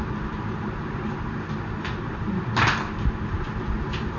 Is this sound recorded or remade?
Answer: recorded